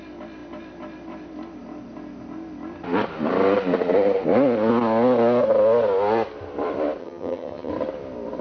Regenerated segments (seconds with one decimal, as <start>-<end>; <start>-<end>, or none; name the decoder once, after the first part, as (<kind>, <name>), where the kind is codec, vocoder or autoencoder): 7.0-7.7 (vocoder, HiFi-GAN)